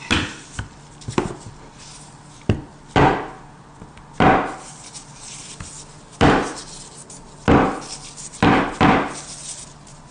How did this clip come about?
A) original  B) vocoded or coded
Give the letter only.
A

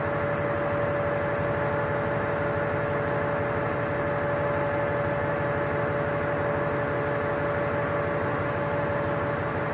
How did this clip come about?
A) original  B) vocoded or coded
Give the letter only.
A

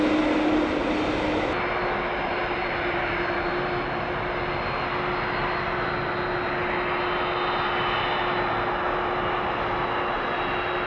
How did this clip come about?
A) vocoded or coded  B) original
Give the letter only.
B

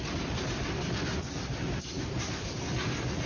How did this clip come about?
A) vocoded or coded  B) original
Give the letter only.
B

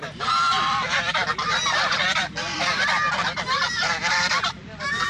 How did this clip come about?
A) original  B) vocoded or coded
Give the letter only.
B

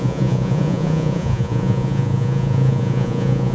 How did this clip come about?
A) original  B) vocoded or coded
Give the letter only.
B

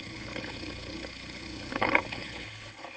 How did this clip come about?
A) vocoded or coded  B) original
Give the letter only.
A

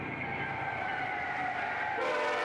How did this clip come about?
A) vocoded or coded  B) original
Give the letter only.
A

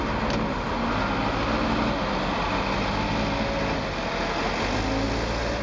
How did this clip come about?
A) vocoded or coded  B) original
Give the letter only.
B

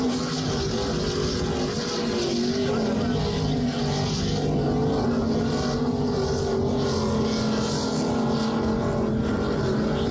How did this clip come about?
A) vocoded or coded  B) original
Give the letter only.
B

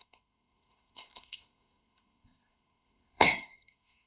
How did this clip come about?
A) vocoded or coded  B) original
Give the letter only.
A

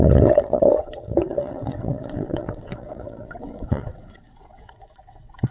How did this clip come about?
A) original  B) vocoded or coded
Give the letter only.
B